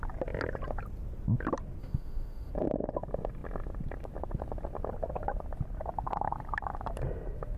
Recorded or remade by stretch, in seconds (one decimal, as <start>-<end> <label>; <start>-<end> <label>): 0.0-1.8 recorded; 1.8-2.5 remade; 2.5-7.6 recorded